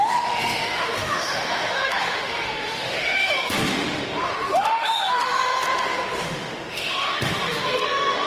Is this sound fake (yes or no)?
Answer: yes